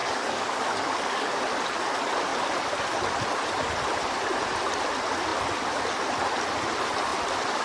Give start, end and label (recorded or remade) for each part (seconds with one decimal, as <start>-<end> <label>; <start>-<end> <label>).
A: 0.0-1.4 remade; 1.4-7.6 recorded